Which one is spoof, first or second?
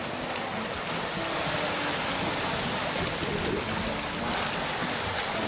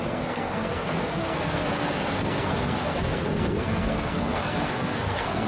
second